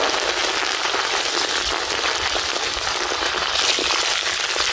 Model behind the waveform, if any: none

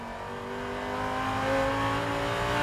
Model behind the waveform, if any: none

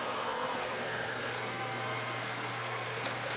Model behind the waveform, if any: codec, SNAC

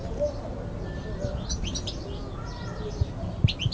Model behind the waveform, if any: none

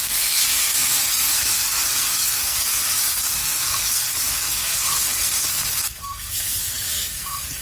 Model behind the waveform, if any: codec, SNAC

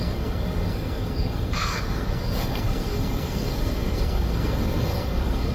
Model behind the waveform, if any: codec, SNAC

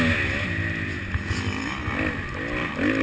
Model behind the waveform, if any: none